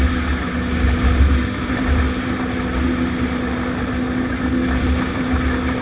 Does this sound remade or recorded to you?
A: recorded